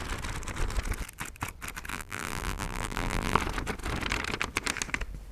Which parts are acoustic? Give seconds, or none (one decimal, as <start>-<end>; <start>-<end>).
0.0-1.9; 3.4-5.3